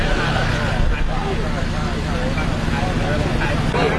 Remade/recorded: recorded